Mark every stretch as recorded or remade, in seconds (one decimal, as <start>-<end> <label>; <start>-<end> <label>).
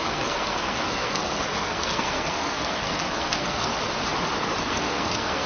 0.0-3.7 remade; 3.7-4.6 recorded; 4.6-5.5 remade